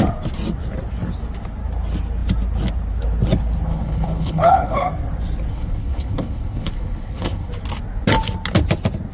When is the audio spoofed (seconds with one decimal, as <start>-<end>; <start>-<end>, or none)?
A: 3.7-4.9; 5.5-7.5